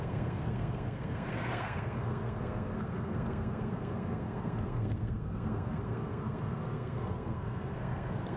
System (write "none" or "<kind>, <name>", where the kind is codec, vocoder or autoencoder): codec, SNAC